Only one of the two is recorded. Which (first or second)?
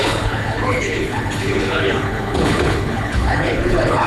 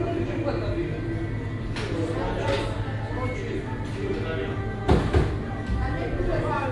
second